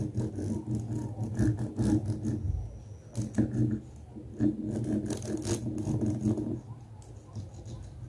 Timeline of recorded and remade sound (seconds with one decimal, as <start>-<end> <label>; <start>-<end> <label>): 0.0-8.1 recorded